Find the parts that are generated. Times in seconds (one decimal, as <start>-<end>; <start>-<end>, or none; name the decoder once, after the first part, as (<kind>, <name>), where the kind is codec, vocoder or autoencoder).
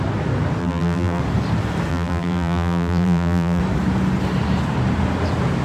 0.6-1.2 (vocoder, BigVGAN v2); 1.9-3.6